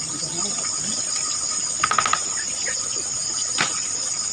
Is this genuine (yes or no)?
yes